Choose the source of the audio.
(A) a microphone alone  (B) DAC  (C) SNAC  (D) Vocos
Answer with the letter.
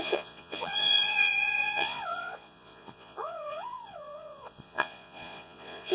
D